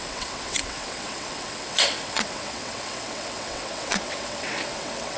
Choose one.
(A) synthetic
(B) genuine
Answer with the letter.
A